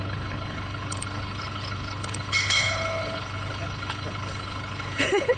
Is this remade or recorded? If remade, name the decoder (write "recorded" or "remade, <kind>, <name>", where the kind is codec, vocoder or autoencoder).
remade, codec, HILCodec